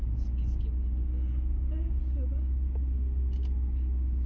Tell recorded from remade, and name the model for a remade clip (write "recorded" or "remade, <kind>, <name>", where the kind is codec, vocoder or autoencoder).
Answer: recorded